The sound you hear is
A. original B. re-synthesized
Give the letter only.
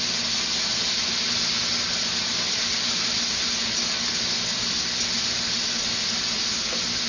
A